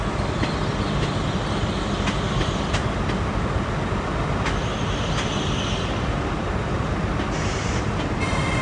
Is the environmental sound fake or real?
real